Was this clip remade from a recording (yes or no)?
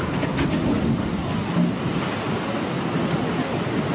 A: no